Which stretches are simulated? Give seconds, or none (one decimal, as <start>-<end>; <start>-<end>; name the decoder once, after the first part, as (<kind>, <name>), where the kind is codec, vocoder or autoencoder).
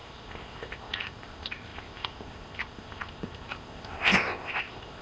0.0-5.0 (codec, ZipCodec)